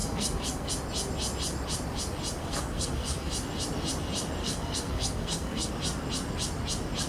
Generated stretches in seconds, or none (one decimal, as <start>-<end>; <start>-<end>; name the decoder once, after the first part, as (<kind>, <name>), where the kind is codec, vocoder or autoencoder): 0.0-0.7 (codec, SNAC); 2.4-3.3; 4.4-5.7